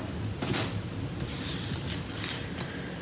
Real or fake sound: real